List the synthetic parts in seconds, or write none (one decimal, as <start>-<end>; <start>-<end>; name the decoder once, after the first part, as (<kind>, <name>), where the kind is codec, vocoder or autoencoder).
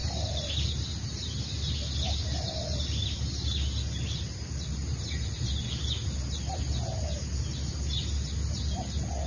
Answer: none